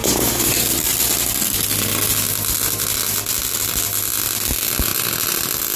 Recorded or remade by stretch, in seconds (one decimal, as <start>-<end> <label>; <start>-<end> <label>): 0.0-1.1 remade; 1.1-5.8 recorded